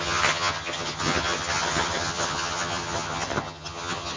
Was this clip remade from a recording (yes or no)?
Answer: yes